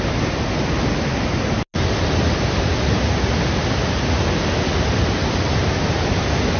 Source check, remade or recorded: recorded